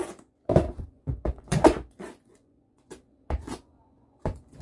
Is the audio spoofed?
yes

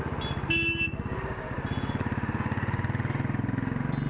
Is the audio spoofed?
no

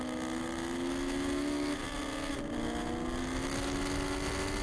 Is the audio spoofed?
no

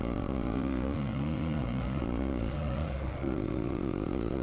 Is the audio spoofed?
yes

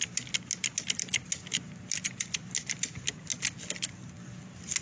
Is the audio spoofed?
no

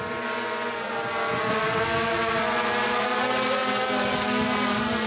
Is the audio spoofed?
no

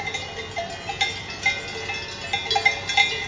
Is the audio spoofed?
no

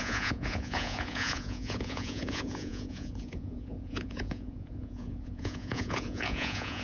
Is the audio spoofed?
yes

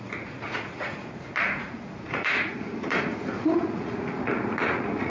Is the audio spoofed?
yes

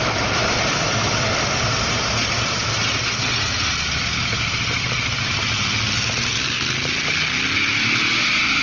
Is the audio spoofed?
no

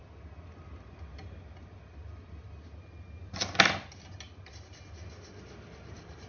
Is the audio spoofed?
no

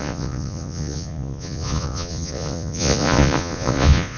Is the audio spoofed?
yes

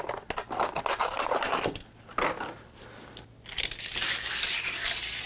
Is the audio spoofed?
no